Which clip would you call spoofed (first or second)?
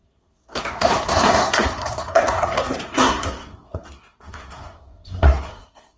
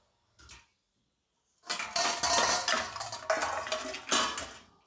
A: first